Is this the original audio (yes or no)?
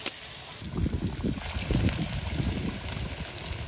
yes